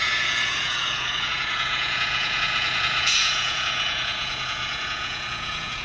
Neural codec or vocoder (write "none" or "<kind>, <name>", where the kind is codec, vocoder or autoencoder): vocoder, Vocos